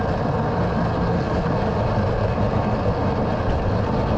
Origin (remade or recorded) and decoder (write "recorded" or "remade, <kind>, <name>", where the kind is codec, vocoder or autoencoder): recorded